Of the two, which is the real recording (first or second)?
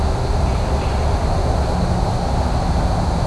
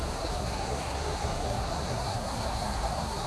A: first